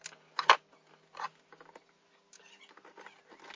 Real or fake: real